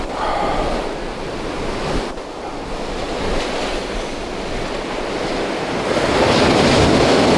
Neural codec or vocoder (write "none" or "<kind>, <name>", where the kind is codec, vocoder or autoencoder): none